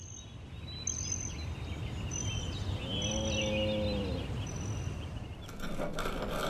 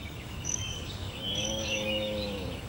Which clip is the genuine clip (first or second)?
first